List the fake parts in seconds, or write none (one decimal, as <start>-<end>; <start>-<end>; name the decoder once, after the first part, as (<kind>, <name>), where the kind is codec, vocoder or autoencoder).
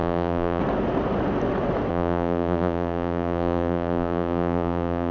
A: 0.0-0.6 (vocoder, BigVGAN v2); 1.9-5.1